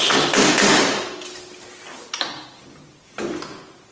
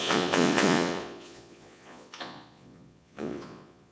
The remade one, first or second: second